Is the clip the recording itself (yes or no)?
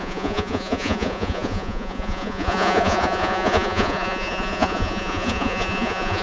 no